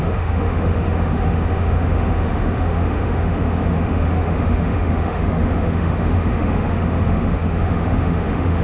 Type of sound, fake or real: fake